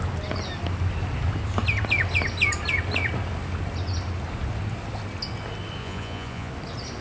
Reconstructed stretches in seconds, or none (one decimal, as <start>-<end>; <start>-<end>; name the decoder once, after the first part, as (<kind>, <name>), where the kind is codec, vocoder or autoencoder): 5.8-6.5 (vocoder, Vocos)